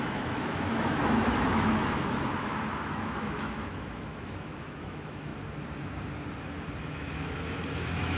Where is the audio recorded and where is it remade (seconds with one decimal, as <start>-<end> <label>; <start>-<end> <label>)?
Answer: 0.0-5.3 remade; 5.3-6.8 recorded; 6.8-8.2 remade